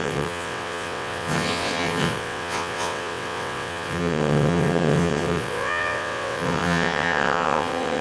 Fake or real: fake